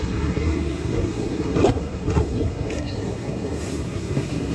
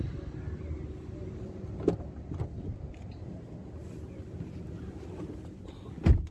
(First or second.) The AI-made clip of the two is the first